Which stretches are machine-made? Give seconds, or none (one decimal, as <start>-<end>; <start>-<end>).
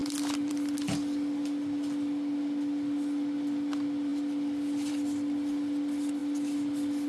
none